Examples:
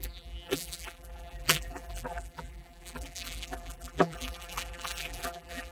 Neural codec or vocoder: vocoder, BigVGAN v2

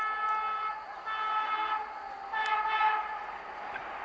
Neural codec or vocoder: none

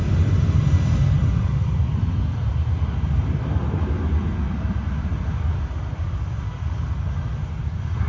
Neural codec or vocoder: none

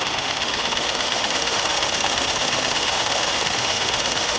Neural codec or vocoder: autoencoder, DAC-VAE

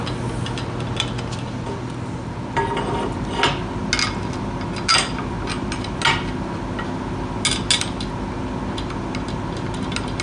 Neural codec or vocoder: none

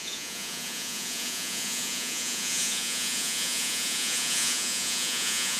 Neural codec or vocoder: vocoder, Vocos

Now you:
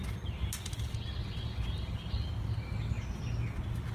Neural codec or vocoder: none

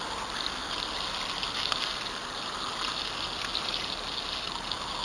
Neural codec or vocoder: none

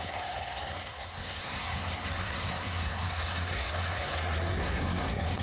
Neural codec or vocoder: codec, SNAC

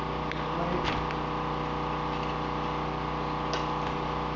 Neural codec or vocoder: none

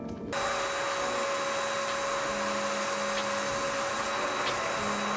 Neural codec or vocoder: none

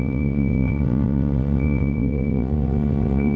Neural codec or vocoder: vocoder, WaveNeXt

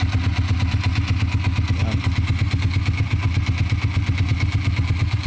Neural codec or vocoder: none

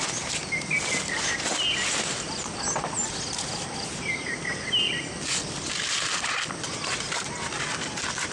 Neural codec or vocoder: none